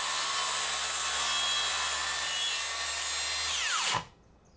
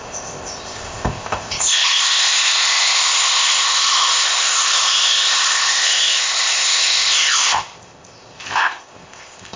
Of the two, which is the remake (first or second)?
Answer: second